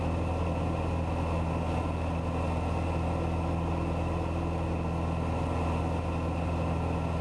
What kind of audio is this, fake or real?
real